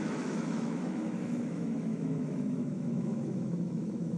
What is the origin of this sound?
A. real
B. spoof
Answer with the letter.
B